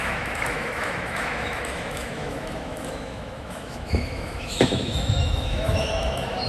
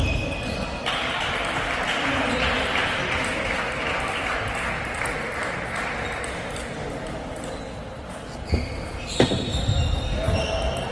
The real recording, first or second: second